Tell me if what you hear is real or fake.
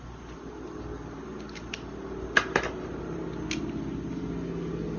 real